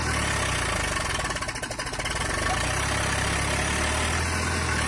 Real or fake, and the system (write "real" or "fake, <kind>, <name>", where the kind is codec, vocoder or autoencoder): real